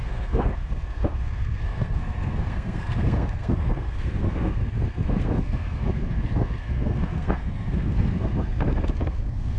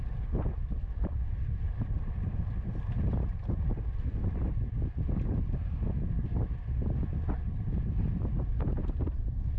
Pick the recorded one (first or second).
second